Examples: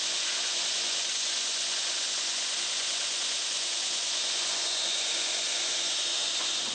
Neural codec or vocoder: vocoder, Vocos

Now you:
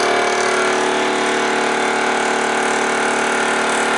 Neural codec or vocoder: none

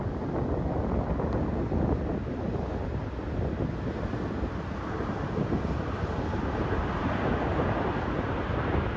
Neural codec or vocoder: none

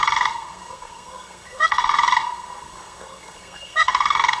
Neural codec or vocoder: codec, SNAC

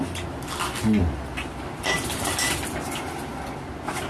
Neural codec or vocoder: none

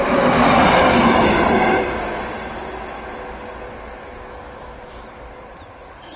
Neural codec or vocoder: none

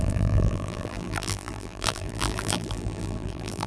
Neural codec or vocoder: vocoder, BigVGAN v2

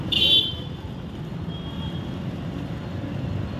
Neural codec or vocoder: vocoder, BigVGAN v2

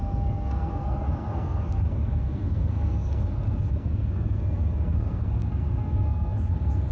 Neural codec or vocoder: codec, SNAC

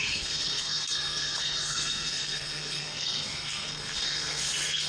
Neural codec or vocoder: codec, SNAC